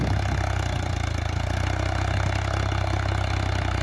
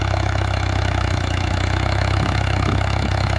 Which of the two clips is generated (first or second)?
second